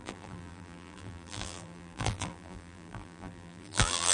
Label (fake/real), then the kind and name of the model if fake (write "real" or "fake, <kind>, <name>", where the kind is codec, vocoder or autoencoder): fake, vocoder, BigVGAN v2